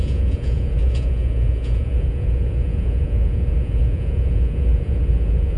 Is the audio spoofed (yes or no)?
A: yes